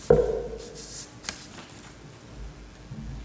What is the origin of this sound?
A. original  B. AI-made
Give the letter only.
A